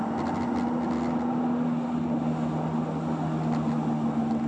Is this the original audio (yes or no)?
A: yes